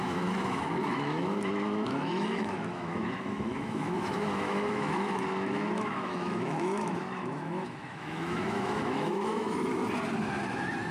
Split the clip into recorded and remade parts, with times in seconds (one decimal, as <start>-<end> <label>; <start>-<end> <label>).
0.0-9.8 remade; 9.8-10.9 recorded